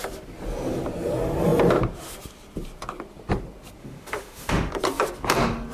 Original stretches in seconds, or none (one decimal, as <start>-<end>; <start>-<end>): 0.0-3.8; 4.7-5.7

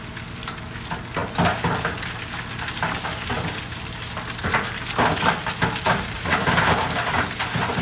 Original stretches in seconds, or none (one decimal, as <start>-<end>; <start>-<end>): 0.0-7.8

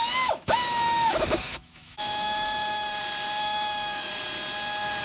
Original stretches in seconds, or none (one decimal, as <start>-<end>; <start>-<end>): 3.0-3.4; 4.1-5.0

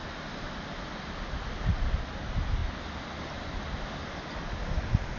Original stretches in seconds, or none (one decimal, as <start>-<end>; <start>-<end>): 0.0-5.2

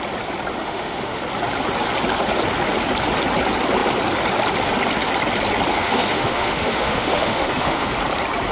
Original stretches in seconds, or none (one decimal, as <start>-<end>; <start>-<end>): 0.0-0.6; 1.2-5.7; 7.9-8.5

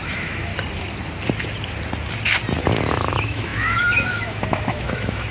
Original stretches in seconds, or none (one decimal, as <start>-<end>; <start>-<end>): 0.5-2.9

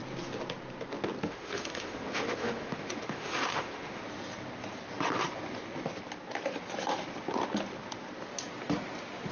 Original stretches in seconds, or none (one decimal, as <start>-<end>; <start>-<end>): 0.0-1.3; 4.0-9.3

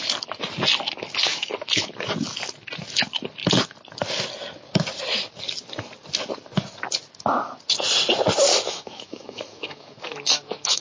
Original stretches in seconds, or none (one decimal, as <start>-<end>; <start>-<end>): 0.0-1.3; 1.9-8.5